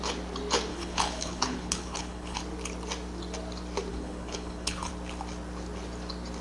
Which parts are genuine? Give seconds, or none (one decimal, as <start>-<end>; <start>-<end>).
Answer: 0.0-0.7; 2.4-3.9; 4.9-6.4